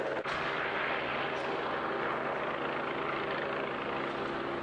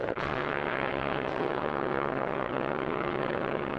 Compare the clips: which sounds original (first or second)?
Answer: first